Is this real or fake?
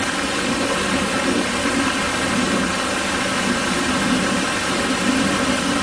real